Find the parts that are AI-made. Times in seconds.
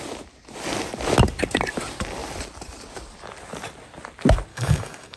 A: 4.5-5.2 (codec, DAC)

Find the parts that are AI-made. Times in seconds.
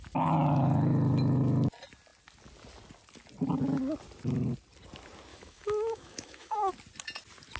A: 5.3-6.7 (autoencoder, DAC-VAE)